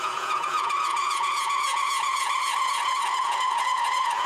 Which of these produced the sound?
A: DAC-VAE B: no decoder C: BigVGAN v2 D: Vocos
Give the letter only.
D